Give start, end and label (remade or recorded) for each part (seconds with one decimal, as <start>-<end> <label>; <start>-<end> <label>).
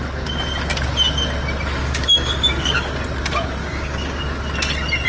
0.0-1.8 recorded; 1.8-2.9 remade; 2.9-3.6 recorded; 3.6-4.2 remade; 4.2-5.1 recorded